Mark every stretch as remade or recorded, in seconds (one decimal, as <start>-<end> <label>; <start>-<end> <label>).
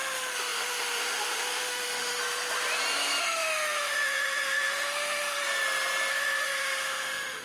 0.0-2.2 remade; 2.2-3.2 recorded; 3.2-5.4 remade; 5.4-6.1 recorded; 6.1-7.4 remade